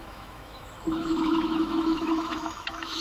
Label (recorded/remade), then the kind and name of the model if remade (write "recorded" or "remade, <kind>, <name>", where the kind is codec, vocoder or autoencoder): remade, autoencoder, DAC-VAE